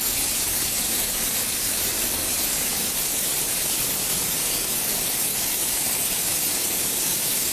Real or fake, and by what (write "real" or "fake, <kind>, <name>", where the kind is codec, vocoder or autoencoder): fake, codec, DAC